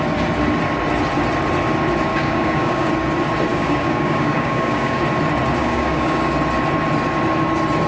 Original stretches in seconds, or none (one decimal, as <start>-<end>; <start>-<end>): 0.0-2.1; 2.9-3.5; 5.0-5.6; 6.3-7.9